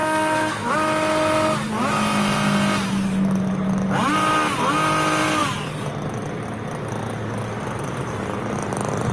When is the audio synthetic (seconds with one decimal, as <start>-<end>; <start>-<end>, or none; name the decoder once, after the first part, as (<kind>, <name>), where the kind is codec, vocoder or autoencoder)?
0.0-0.7 (codec, SNAC)